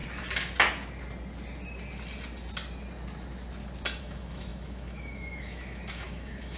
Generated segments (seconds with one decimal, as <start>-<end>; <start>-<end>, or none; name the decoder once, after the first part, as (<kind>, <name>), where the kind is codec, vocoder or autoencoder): 4.0-6.6 (autoencoder, DAC-VAE)